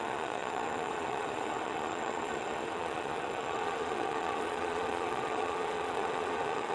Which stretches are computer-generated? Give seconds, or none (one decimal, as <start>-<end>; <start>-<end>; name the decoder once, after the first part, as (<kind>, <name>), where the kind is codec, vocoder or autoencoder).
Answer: 0.0-6.7 (vocoder, Vocos)